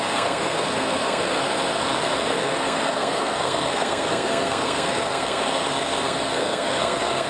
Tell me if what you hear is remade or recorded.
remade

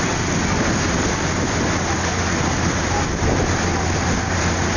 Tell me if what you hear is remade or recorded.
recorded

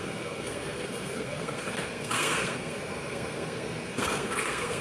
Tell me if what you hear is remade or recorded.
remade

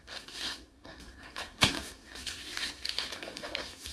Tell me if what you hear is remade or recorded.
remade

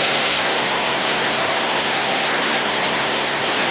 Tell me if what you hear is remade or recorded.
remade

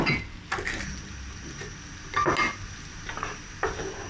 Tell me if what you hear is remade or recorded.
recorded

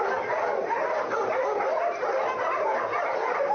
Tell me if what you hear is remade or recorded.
recorded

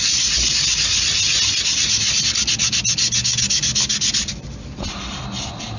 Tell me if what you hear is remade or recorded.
recorded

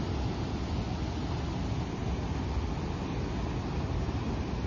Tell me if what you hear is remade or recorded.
recorded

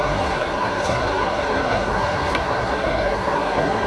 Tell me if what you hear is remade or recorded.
remade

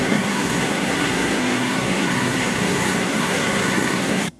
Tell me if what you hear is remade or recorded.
remade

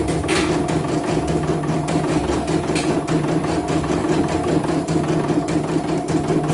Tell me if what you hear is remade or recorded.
recorded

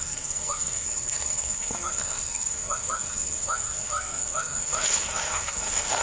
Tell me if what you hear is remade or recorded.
remade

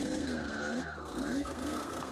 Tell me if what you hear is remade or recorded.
remade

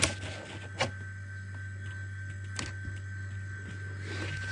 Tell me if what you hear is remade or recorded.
recorded